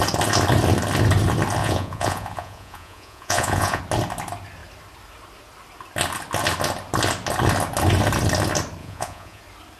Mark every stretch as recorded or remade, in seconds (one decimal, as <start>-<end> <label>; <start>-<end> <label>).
0.0-1.6 recorded; 1.6-3.8 remade; 3.8-8.8 recorded; 8.8-9.4 remade; 9.4-9.8 recorded